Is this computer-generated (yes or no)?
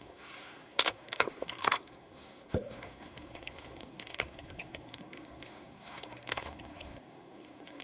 yes